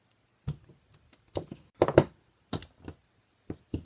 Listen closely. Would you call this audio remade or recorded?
recorded